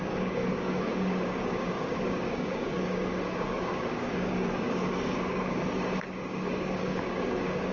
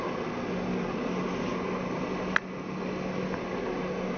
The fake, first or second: first